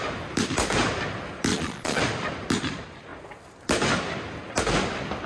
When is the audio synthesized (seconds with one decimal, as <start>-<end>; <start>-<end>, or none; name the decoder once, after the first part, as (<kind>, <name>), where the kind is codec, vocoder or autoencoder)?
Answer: 1.5-2.0 (vocoder, Vocos)